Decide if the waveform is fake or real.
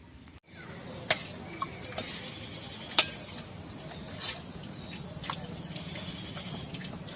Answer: real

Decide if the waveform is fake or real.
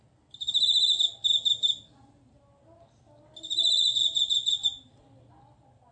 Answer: real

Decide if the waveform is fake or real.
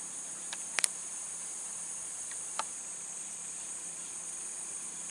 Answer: fake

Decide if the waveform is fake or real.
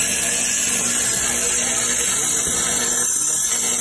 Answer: real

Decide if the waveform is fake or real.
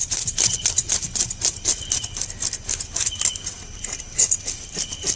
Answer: real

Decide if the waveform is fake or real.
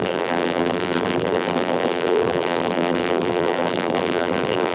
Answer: fake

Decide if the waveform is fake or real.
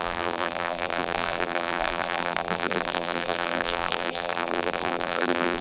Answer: fake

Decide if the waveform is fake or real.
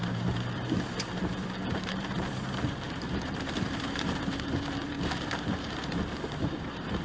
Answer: fake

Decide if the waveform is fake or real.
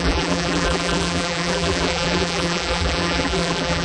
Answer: fake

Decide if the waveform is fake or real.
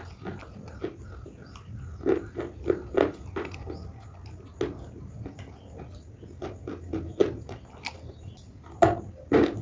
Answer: real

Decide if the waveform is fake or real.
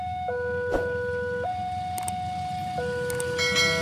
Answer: real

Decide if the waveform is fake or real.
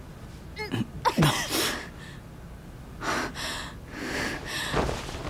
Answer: real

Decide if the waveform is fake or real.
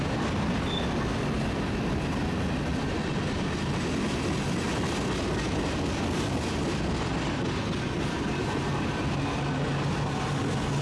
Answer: real